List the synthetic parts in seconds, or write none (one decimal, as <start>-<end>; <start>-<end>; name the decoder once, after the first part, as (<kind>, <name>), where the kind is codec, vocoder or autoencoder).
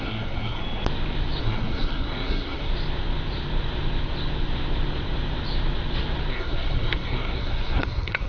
0.0-0.6 (codec, SNAC); 1.4-2.7; 6.3-8.3